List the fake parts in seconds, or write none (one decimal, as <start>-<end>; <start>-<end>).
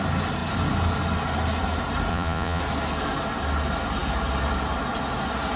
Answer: 2.1-2.6